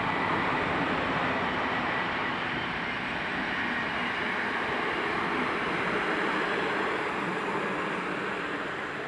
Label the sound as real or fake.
real